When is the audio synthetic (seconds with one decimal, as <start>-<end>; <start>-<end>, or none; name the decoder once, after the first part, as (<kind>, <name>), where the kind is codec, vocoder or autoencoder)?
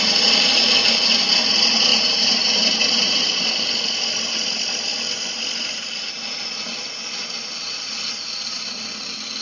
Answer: 1.9-3.7 (vocoder, BigVGAN v2)